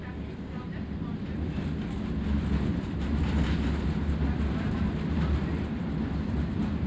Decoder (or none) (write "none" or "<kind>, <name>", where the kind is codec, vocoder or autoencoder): none